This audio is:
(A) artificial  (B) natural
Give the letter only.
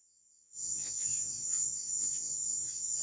A